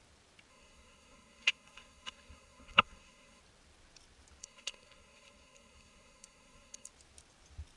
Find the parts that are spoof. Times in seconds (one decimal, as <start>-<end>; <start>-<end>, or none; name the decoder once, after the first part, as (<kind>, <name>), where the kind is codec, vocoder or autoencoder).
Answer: 0.5-3.4 (codec, SNAC); 4.4-6.9